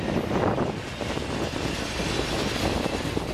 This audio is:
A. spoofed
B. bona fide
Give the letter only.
B